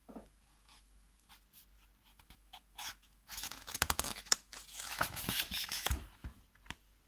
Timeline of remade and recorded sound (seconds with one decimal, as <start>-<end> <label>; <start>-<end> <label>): 0.0-1.3 remade; 1.3-2.1 recorded; 2.1-6.4 remade; 6.4-7.1 recorded